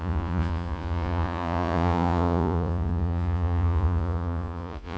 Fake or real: fake